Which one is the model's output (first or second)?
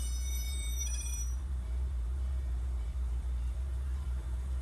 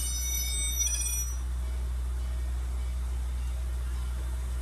first